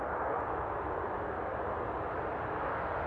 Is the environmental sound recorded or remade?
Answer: recorded